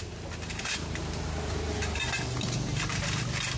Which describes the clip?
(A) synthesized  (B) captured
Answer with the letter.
B